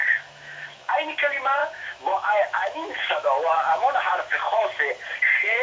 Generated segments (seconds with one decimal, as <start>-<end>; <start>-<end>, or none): 0.0-0.9; 1.6-4.9